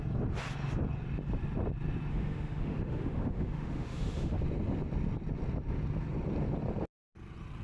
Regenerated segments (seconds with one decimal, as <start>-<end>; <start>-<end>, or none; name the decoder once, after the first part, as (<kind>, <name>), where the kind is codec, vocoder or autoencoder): 2.1-4.4 (autoencoder, DAC-VAE)